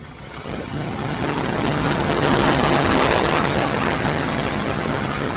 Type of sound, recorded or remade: remade